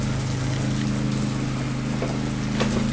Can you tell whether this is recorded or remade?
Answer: recorded